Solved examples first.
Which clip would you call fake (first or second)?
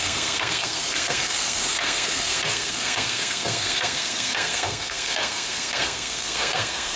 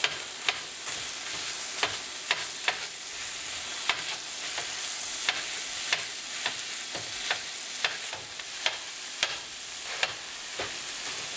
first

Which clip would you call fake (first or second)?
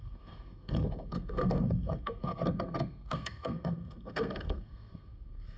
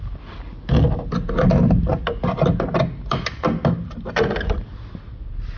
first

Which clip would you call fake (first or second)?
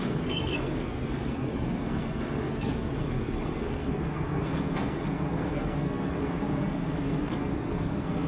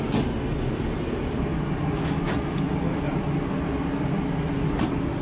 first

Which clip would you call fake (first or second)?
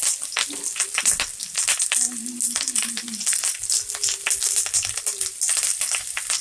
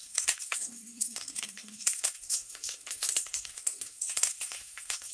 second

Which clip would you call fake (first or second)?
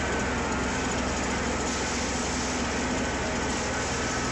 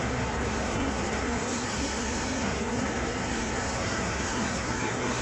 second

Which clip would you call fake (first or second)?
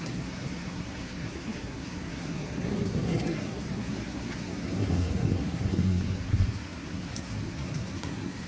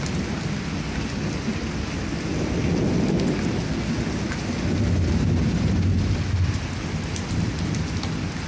first